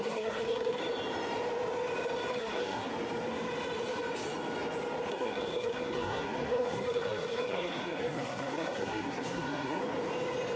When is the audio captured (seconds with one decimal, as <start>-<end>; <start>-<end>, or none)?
0.8-2.3; 2.9-5.1; 9.8-10.6